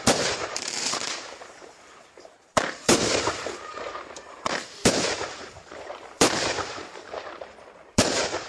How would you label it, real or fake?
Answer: fake